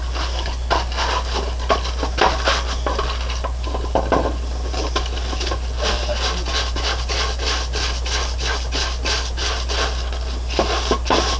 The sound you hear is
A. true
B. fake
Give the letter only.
A